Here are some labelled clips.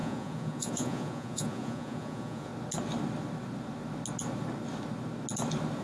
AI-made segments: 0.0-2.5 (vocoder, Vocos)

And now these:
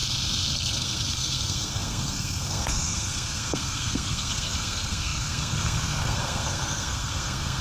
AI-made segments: 0.0-7.6 (codec, SNAC)

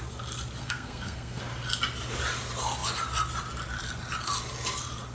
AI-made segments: 0.6-1.4 (codec, SNAC)

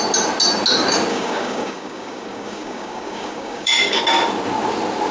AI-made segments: 1.1-4.0 (codec, DAC)